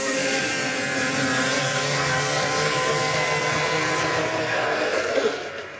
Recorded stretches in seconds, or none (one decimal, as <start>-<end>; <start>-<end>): 0.5-1.6; 3.9-4.4